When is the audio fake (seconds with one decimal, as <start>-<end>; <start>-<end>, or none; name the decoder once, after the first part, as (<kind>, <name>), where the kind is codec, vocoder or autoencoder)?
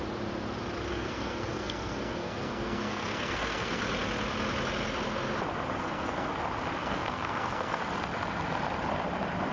0.9-3.8 (codec, SNAC); 5.8-6.3; 6.8-7.8